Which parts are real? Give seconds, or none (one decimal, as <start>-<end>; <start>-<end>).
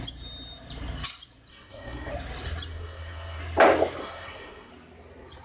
0.0-1.5; 2.1-2.7; 3.4-4.0; 4.7-5.4